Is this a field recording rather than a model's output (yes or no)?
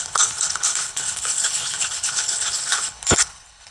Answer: no